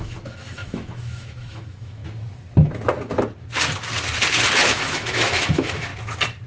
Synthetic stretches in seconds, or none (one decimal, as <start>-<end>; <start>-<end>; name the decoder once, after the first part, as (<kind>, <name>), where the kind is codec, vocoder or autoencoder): 0.0-2.0 (autoencoder, DAC-VAE); 4.6-5.9